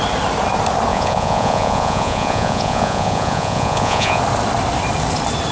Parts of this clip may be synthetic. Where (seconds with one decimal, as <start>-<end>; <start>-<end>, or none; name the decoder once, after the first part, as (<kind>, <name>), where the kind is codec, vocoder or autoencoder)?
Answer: 0.9-4.2 (vocoder, Vocos)